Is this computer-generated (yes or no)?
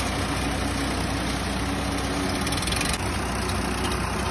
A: no